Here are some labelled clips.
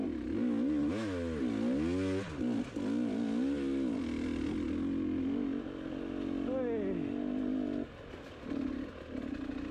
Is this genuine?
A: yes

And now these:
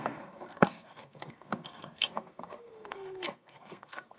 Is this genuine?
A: no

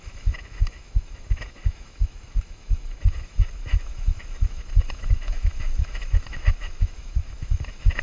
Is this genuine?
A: no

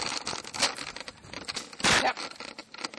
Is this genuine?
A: yes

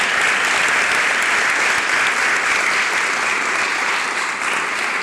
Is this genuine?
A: yes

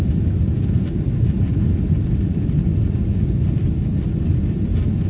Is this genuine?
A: yes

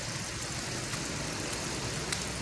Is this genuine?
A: yes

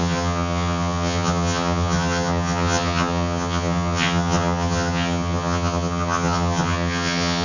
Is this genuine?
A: no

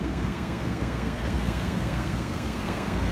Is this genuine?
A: no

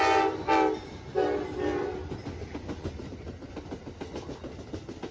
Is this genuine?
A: yes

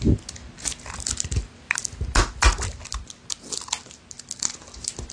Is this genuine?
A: yes